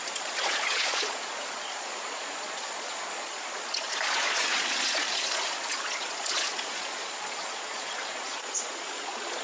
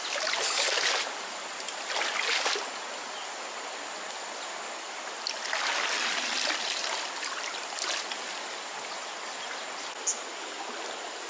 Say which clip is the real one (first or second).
second